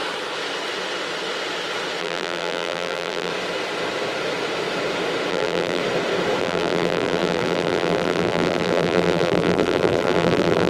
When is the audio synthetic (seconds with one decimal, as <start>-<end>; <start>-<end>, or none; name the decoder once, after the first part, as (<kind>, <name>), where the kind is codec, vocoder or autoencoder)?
2.0-3.3 (vocoder, BigVGAN v2); 5.3-5.8; 6.4-10.7